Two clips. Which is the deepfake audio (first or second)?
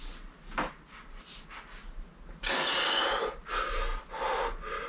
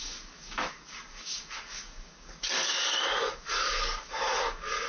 second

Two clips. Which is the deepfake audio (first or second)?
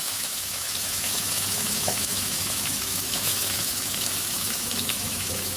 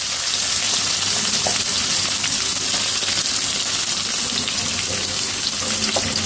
first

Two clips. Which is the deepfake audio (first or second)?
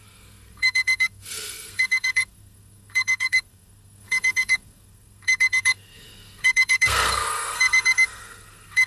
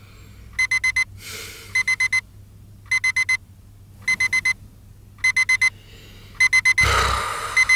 first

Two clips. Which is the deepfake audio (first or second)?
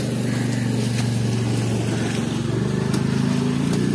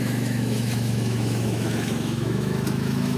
second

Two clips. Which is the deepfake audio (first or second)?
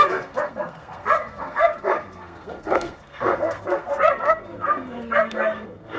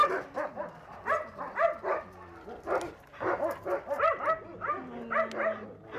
first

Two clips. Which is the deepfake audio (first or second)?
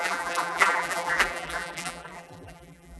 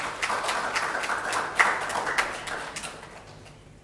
first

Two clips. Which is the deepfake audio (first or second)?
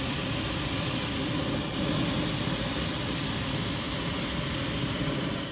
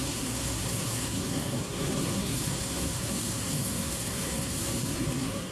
second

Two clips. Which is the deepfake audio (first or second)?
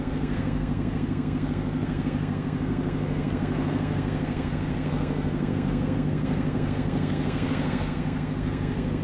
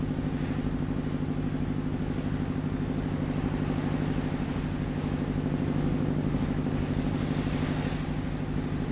first